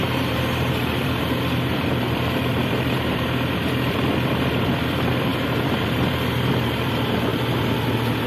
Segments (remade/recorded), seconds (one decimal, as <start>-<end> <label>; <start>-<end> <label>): 0.0-7.3 remade; 7.3-8.3 recorded